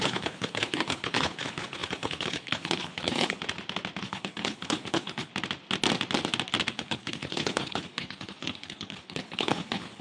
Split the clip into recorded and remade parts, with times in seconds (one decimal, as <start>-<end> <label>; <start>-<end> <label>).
0.0-3.4 remade; 3.4-4.0 recorded; 4.0-5.3 remade; 5.3-6.7 recorded; 6.7-10.0 remade